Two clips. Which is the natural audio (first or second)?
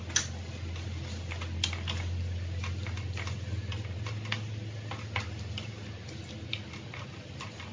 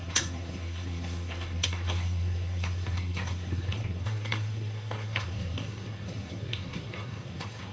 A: first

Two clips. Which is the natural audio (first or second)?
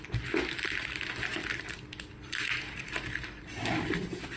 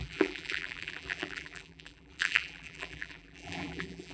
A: first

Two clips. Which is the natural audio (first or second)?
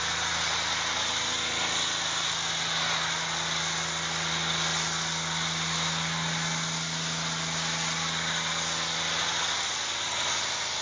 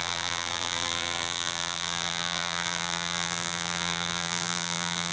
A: first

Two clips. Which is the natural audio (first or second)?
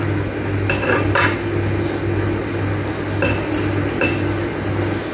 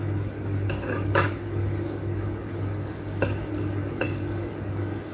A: first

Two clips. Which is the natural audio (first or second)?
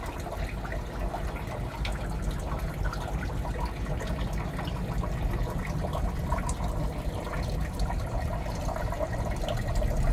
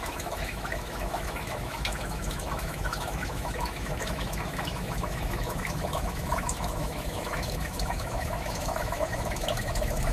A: first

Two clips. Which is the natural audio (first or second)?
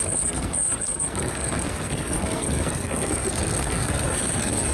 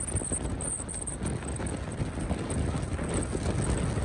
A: second